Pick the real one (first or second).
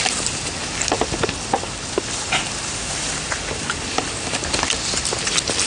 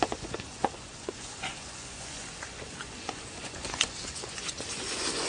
first